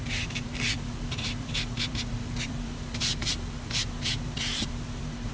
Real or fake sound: fake